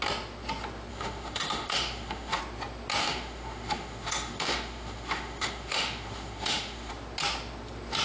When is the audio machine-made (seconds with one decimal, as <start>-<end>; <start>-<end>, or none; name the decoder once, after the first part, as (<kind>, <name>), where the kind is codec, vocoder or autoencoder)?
0.9-2.4 (autoencoder, DAC-VAE); 3.0-6.9